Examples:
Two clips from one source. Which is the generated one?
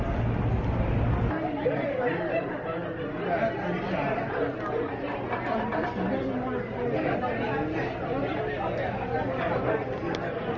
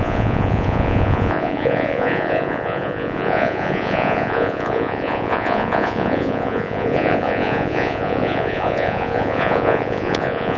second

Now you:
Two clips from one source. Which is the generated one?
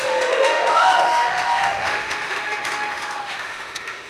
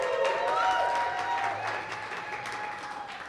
first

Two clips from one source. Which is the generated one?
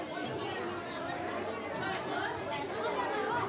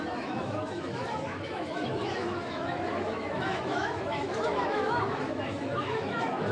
second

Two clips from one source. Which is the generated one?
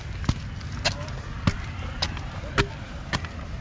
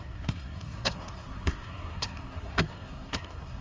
second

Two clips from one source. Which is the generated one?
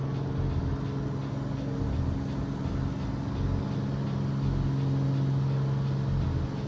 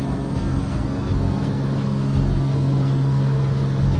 second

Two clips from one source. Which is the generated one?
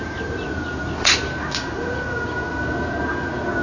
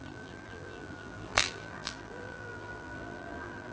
second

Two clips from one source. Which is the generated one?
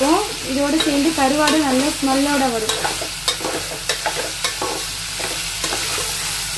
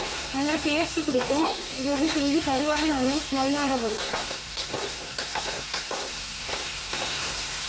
second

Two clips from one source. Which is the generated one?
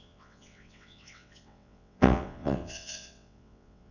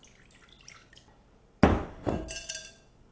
first